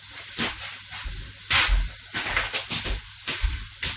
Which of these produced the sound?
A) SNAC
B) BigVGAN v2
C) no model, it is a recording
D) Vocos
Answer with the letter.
C